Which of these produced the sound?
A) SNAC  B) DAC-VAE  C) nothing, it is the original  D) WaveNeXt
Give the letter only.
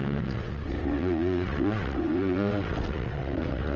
D